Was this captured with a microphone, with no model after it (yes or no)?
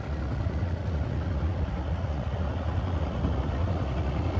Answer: no